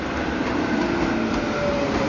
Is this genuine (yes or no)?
yes